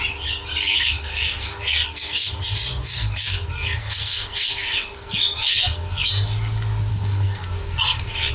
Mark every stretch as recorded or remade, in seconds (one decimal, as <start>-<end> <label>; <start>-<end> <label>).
0.0-0.6 recorded; 0.6-2.3 remade; 2.3-2.8 recorded; 2.8-6.1 remade; 6.1-6.9 recorded; 6.9-8.3 remade